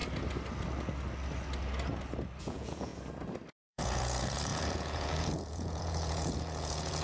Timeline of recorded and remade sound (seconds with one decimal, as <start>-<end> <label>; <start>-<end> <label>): 0.0-2.4 recorded; 2.4-2.9 remade; 2.9-3.5 recorded; 3.5-7.0 remade